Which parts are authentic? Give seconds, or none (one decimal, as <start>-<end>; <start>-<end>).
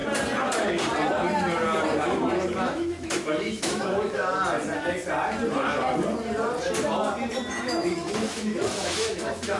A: 0.0-2.6; 4.2-7.5